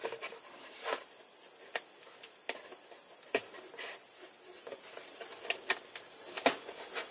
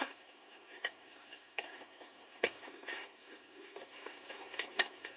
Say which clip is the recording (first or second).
first